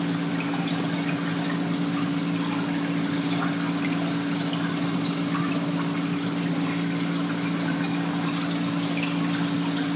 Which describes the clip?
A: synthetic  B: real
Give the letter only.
B